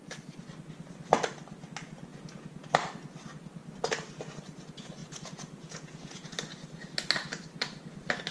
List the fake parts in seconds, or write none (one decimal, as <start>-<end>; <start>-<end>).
2.1-2.7; 5.0-6.3